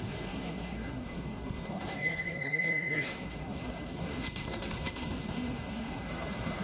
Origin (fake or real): fake